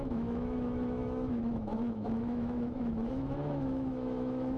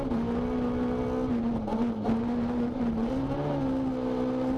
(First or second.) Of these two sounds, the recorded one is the second